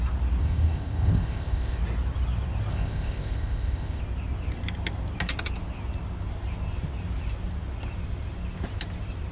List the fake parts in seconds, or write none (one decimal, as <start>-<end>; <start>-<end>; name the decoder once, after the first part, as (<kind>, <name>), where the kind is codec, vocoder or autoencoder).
0.4-1.8 (codec, ZipCodec); 2.7-4.0